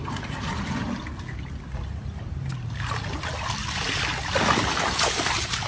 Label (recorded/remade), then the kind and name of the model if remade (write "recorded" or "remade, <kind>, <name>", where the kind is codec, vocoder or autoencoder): recorded